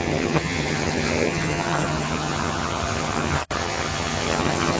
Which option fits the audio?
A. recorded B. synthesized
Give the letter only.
B